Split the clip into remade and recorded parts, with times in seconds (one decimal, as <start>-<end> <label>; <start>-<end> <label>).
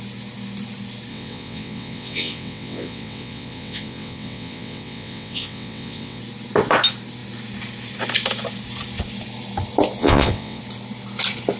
0.0-1.1 recorded; 1.1-6.2 remade; 6.2-10.0 recorded; 10.0-10.6 remade; 10.6-11.6 recorded